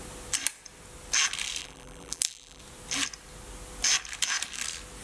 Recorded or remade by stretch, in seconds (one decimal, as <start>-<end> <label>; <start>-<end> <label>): 0.0-1.6 recorded; 1.6-2.6 remade; 2.6-5.0 recorded